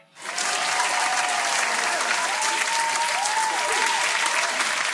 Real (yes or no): yes